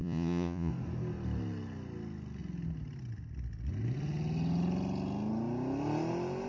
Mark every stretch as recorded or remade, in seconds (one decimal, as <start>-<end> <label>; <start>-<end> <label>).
0.0-0.7 remade; 0.7-6.5 recorded